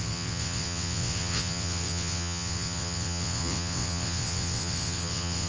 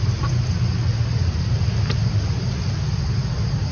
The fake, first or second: first